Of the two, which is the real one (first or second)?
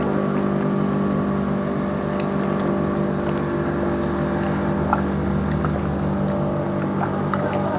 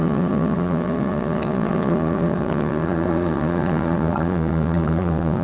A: first